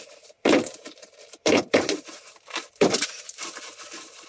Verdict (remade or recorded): remade